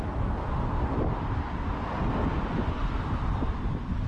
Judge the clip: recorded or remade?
remade